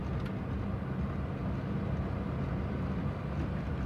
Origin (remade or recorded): recorded